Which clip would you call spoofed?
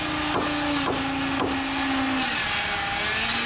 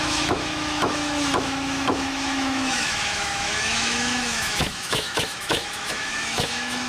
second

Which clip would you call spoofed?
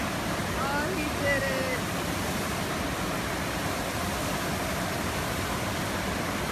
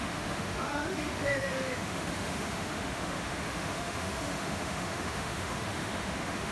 second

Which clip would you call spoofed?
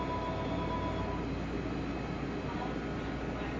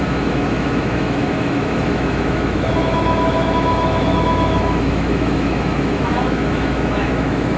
second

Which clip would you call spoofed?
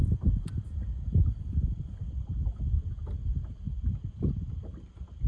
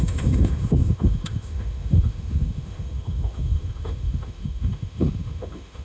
second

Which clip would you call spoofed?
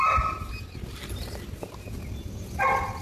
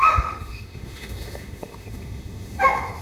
second